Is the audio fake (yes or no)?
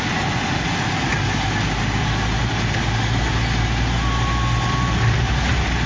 no